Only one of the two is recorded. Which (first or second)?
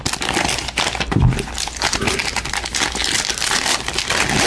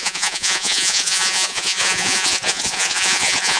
first